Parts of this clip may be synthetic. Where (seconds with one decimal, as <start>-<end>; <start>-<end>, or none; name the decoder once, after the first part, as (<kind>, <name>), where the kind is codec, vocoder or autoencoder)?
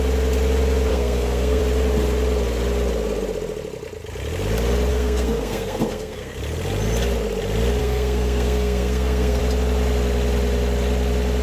0.9-1.6 (codec, SNAC); 4.9-6.4; 7.8-9.4